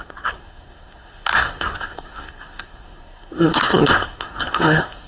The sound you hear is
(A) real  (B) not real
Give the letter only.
B